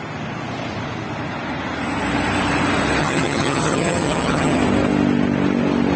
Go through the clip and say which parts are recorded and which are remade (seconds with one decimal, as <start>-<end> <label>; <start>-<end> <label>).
0.0-3.0 recorded; 3.0-4.6 remade; 4.6-6.0 recorded